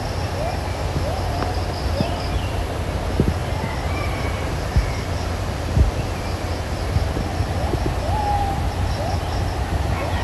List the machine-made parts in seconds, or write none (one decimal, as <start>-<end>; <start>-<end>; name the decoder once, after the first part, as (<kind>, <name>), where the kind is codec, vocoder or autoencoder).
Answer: 3.4-6.2 (vocoder, BigVGAN v2)